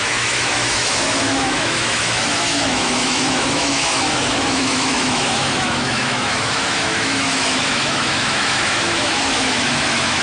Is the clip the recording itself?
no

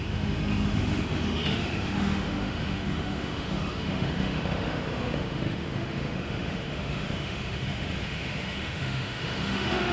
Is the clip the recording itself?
no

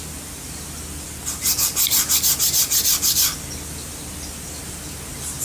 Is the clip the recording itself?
yes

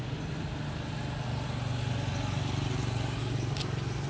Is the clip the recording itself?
yes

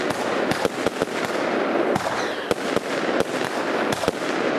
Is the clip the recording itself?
yes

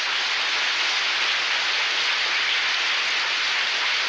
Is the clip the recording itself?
yes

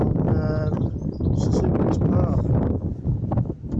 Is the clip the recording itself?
yes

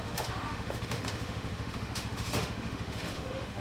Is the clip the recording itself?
no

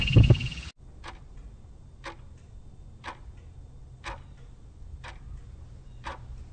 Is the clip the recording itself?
yes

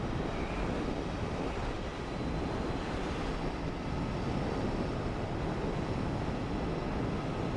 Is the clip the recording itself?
yes